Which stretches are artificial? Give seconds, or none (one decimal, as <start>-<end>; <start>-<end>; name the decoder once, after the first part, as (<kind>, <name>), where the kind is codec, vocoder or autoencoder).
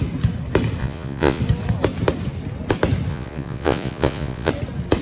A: 0.8-1.4 (vocoder, Vocos); 3.1-4.5